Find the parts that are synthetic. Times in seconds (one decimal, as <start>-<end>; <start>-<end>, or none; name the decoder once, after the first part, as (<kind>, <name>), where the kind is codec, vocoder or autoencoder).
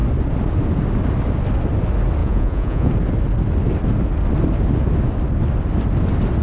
2.2-2.9 (vocoder, Vocos)